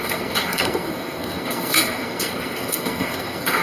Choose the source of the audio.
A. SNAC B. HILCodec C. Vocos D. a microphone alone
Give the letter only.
A